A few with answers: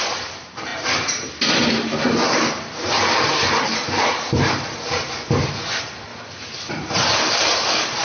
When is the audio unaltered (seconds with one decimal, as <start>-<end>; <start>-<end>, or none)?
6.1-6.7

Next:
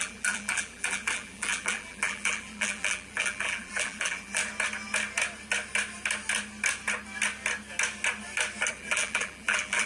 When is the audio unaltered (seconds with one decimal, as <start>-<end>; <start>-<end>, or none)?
4.4-8.7

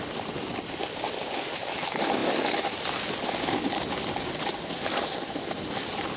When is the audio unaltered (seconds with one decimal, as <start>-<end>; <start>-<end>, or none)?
0.0-6.2